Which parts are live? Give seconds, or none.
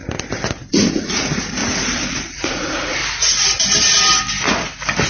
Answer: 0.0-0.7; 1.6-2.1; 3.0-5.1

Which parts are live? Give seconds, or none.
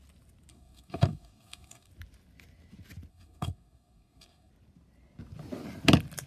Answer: 0.0-0.5; 1.9-3.1; 4.5-6.3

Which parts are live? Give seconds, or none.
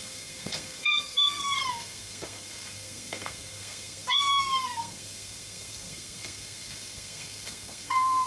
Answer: none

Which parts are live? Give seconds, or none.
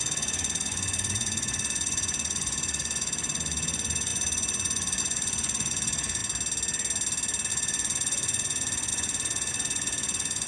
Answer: 6.2-7.5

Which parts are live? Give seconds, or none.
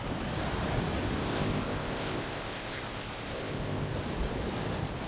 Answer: 0.0-1.2; 3.9-5.1